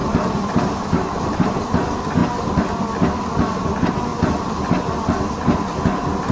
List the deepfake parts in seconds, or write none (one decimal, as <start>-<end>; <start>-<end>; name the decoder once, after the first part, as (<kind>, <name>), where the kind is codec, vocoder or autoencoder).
0.0-1.7 (vocoder, BigVGAN v2)